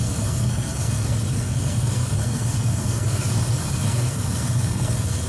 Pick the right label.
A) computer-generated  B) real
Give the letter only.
A